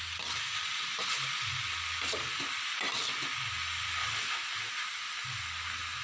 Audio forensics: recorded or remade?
recorded